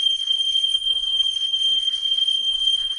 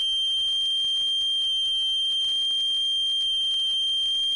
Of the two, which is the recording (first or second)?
second